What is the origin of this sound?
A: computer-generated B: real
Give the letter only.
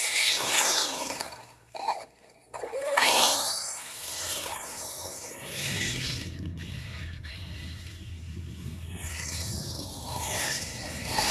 A